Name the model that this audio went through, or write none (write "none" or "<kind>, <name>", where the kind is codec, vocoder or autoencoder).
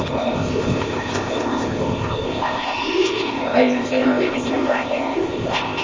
codec, ZipCodec